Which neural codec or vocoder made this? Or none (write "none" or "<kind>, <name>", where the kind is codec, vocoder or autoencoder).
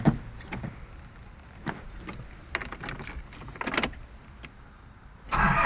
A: none